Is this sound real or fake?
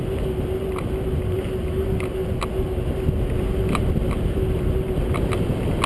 real